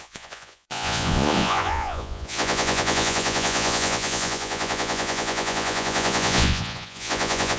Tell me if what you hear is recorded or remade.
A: remade